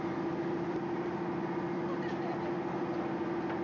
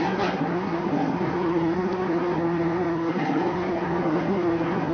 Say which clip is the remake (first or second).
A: second